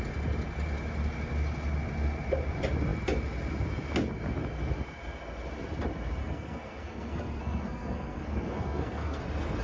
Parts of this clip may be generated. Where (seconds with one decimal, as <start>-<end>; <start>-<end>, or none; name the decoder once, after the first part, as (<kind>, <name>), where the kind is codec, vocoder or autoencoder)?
6.2-9.2 (codec, SNAC)